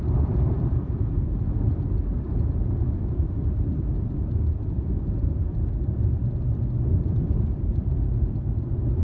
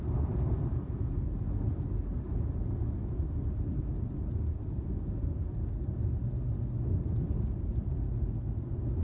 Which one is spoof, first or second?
first